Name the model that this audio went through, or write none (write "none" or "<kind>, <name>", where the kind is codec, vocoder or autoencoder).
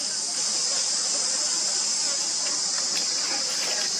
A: none